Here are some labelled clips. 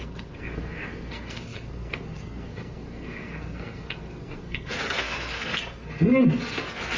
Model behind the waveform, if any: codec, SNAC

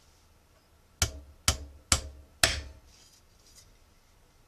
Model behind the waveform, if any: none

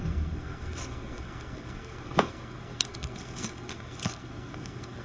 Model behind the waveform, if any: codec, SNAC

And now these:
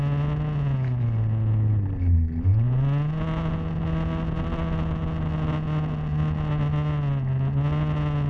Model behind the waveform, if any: none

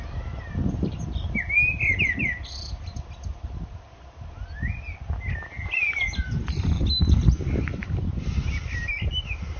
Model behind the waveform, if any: none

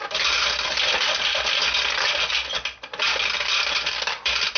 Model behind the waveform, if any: none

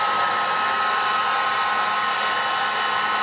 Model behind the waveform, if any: none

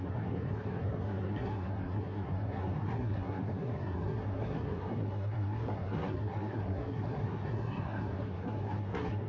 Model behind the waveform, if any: codec, SNAC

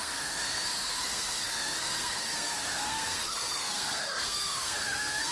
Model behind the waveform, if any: codec, SNAC